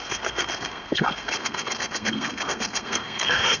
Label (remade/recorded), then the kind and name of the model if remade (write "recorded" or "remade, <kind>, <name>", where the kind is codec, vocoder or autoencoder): remade, codec, SNAC